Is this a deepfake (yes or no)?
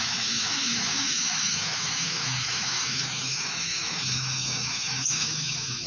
yes